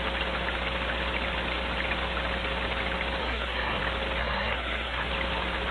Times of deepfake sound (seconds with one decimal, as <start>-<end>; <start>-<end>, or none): 3.2-3.8; 4.2-5.1